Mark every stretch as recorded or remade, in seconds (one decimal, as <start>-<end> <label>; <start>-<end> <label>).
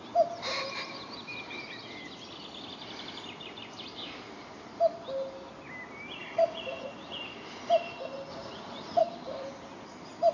0.0-6.2 recorded; 6.2-7.2 remade; 7.2-8.3 recorded; 8.3-9.0 remade; 9.0-10.3 recorded